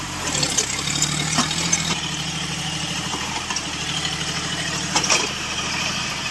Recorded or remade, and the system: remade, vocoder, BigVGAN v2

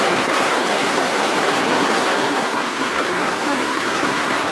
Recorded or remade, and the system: remade, codec, SNAC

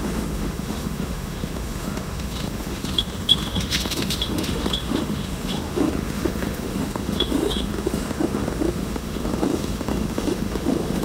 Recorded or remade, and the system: remade, autoencoder, DAC-VAE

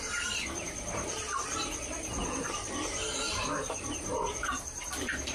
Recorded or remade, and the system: remade, vocoder, BigVGAN v2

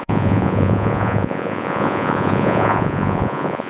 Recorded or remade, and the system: remade, vocoder, Vocos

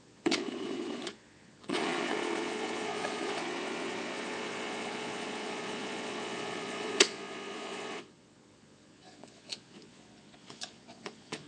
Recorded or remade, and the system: remade, vocoder, Vocos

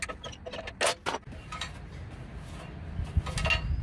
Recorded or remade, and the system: recorded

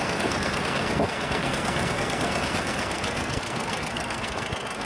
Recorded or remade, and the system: remade, codec, SNAC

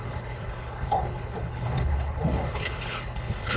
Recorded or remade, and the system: remade, codec, HILCodec